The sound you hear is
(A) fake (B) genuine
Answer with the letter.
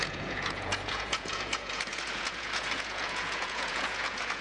A